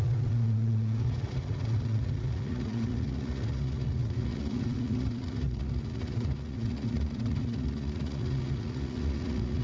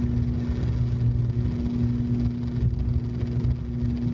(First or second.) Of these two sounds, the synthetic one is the first